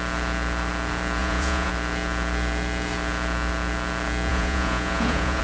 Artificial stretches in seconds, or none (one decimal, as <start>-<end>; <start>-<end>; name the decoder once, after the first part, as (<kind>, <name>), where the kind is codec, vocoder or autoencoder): 1.2-1.7 (vocoder, Vocos); 4.3-5.4